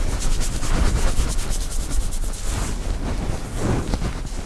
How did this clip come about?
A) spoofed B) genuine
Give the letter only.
B